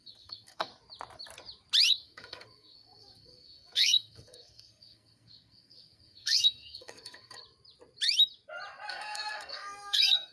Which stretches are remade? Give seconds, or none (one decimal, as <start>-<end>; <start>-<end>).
0.0-0.7; 1.9-7.4; 8.9-10.3